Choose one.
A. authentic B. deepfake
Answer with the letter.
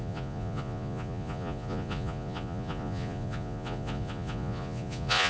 B